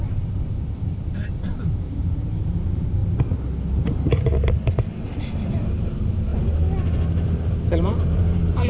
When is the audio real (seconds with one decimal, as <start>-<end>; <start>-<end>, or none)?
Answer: 3.0-5.5; 6.3-7.5